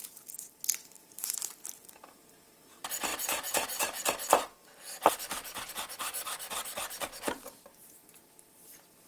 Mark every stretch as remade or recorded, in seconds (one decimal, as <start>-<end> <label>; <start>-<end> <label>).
0.0-2.0 remade; 2.0-9.1 recorded